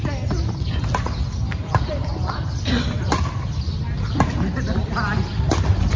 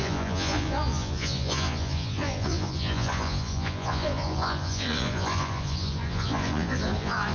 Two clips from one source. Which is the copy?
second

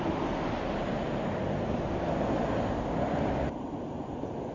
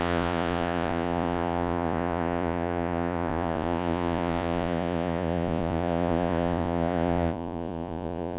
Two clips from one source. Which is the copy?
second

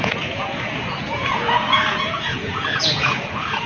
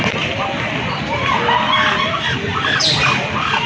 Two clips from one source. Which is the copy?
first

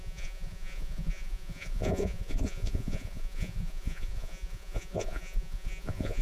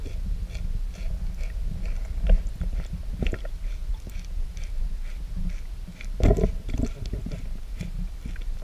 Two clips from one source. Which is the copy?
first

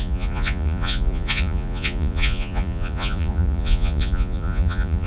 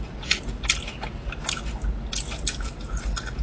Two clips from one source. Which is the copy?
first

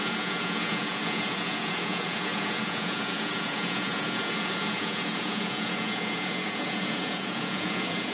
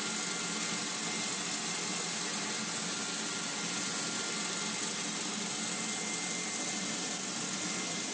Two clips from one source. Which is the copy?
first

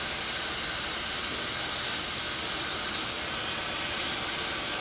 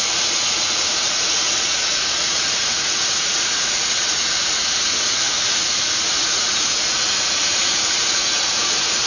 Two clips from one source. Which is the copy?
second